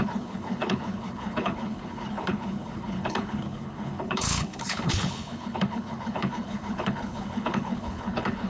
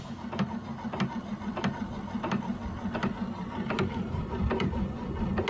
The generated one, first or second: first